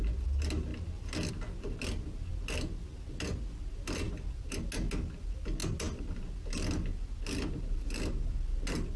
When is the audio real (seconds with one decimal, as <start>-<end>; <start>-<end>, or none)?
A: 0.0-9.0